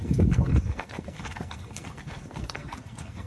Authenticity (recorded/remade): remade